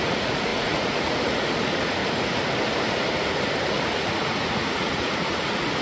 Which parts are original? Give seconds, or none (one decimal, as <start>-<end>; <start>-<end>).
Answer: 2.0-3.7